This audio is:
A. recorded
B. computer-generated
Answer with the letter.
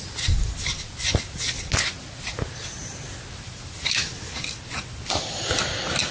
A